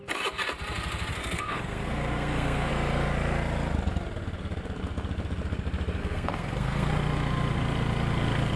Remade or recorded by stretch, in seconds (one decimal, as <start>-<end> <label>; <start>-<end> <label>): 0.0-1.1 recorded; 1.1-2.7 remade; 2.7-6.0 recorded; 6.0-6.9 remade; 6.9-8.6 recorded